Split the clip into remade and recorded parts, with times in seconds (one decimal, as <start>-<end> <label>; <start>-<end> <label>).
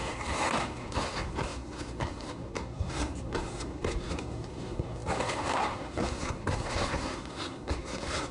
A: 0.0-8.3 remade